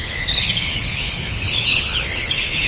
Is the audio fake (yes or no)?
yes